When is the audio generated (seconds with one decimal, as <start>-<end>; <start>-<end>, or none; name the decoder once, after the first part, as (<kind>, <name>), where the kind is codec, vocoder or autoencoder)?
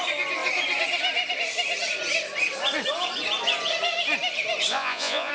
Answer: 4.7-5.3 (vocoder, Vocos)